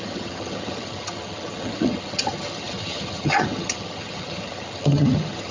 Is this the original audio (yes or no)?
no